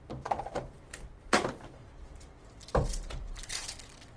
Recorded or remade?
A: remade